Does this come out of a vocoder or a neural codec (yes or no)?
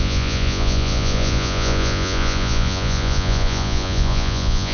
yes